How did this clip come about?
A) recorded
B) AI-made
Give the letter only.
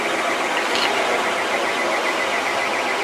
A